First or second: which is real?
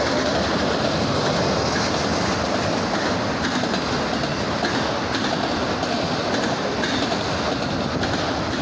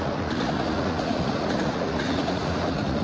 first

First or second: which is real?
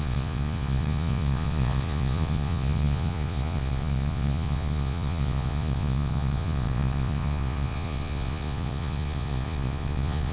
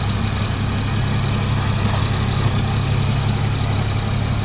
second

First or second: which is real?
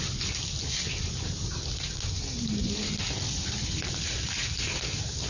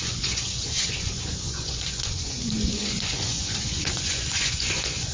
first